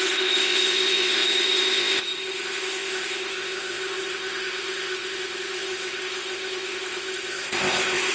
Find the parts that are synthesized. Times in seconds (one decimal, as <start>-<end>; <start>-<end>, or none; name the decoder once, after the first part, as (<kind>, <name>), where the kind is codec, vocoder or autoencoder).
0.0-8.1 (codec, ZipCodec)